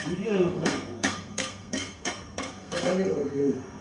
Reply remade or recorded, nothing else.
remade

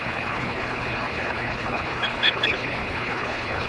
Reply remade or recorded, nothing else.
remade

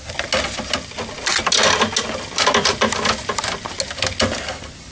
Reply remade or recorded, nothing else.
recorded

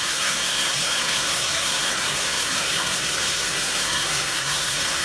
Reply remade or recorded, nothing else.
remade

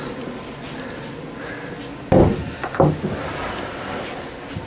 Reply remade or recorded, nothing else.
recorded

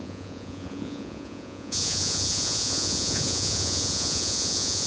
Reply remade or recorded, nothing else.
remade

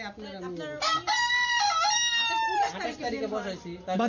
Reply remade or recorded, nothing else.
recorded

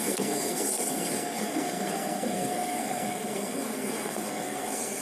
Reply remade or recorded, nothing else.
remade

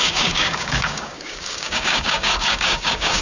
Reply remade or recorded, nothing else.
remade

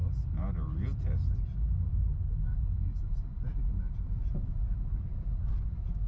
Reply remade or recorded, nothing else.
recorded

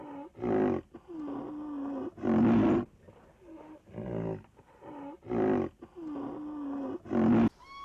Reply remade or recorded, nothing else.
recorded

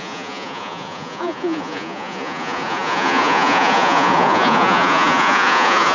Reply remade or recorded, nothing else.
remade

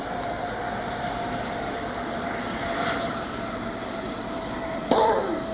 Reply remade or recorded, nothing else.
remade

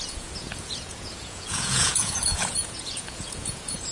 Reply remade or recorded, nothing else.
remade